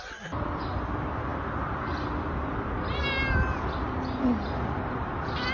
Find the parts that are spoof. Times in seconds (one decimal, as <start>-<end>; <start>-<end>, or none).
none